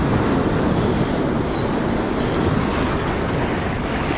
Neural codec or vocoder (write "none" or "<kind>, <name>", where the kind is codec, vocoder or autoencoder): none